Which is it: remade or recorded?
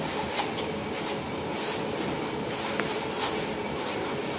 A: recorded